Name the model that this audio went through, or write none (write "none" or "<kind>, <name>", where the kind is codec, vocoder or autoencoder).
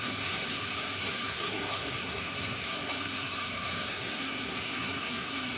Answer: codec, SNAC